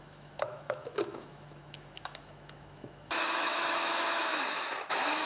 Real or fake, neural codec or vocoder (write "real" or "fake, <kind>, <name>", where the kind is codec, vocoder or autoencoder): fake, autoencoder, DAC-VAE